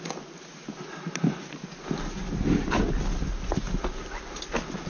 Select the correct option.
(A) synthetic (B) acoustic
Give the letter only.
B